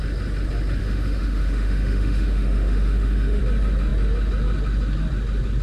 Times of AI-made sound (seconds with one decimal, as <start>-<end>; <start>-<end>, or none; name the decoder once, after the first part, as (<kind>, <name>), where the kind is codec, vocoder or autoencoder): 0.8-3.4 (autoencoder, DAC-VAE)